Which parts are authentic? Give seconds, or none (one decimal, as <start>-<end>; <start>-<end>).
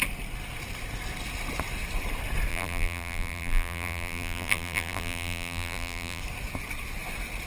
0.0-2.5; 6.2-7.5